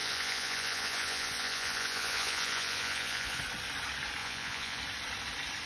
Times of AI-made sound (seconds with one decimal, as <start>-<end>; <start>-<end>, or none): 0.0-3.4; 4.2-4.8